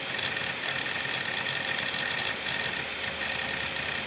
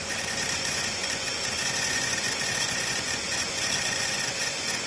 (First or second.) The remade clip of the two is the second